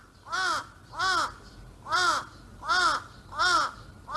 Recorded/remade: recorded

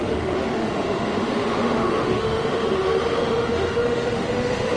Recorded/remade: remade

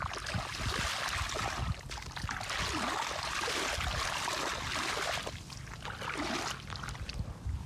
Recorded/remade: recorded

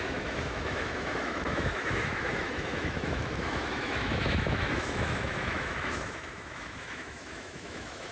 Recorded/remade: remade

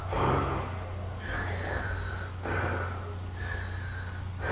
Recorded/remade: recorded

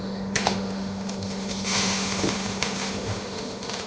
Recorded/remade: remade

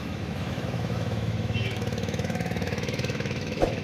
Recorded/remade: remade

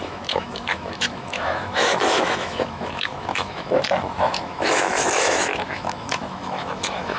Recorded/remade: remade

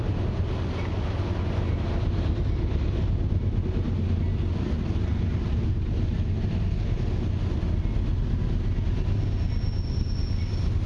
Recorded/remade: recorded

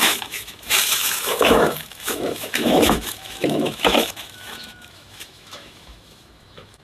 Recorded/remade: remade